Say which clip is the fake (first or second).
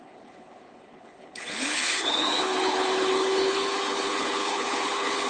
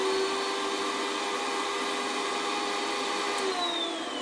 first